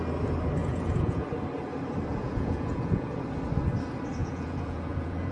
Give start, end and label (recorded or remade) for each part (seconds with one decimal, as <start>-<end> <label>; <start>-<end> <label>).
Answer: 0.0-0.6 recorded; 0.6-1.3 remade; 1.3-2.1 recorded; 2.1-3.1 remade; 3.1-4.2 recorded; 4.2-5.3 remade